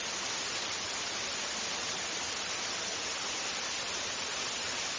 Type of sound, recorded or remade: recorded